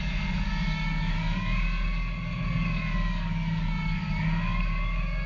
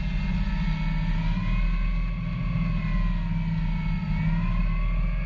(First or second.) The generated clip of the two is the first